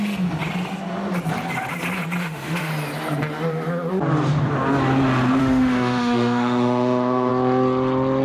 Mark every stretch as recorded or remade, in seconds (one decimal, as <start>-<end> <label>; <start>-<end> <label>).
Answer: 0.0-2.2 recorded; 2.2-2.7 remade; 2.7-5.4 recorded; 5.4-7.3 remade; 7.3-8.2 recorded